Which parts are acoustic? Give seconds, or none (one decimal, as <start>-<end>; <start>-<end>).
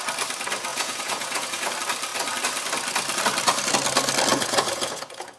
0.0-0.7; 1.7-4.3